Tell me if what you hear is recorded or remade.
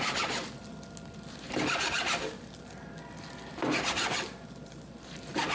recorded